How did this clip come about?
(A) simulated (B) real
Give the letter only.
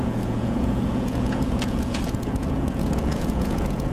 A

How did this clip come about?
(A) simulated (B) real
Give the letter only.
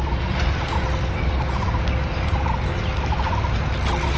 B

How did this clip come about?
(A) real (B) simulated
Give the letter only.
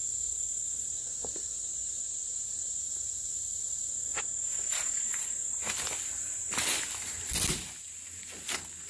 A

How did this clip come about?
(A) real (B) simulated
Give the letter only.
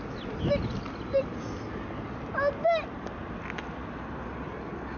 A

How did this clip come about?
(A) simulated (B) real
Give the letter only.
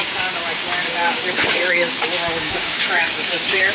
A